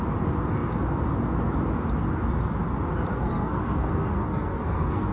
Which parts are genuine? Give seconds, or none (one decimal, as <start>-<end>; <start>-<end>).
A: 0.0-3.1